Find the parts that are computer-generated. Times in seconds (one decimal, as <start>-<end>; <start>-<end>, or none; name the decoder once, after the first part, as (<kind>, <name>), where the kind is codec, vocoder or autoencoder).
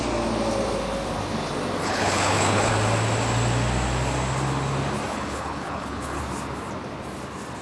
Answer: 1.8-2.7 (codec, HILCodec); 5.1-6.2